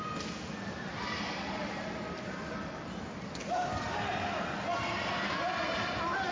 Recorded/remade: recorded